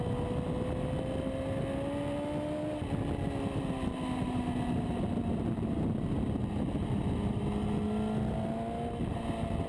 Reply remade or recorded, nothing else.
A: recorded